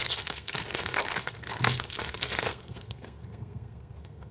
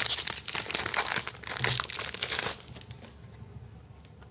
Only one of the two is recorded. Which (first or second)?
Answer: second